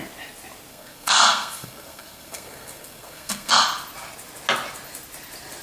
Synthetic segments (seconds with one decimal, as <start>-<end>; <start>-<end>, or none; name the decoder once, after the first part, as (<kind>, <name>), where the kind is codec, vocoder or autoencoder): 0.7-3.6 (codec, SNAC)